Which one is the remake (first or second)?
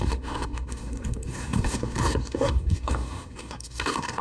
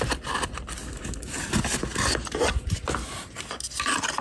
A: first